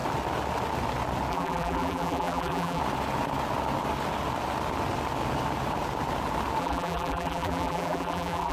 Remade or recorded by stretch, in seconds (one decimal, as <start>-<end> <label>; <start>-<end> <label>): 0.0-1.3 recorded; 1.3-2.8 remade; 2.8-6.6 recorded; 6.6-8.5 remade